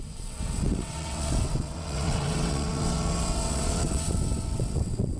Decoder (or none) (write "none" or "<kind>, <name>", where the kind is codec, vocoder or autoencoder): vocoder, WaveNeXt